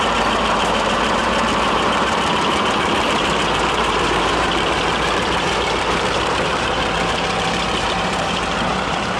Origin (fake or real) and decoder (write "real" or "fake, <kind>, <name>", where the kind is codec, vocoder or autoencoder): fake, vocoder, BigVGAN v2